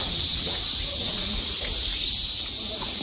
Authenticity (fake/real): fake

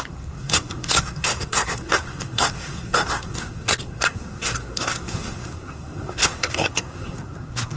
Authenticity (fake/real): fake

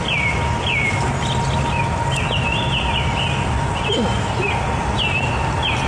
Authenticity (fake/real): real